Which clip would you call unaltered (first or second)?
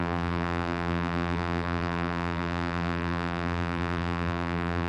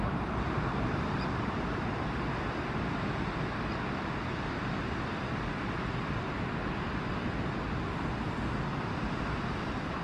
second